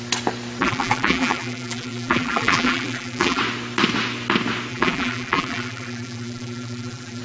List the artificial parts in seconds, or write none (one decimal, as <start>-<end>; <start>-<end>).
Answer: 0.6-3.4; 4.7-7.2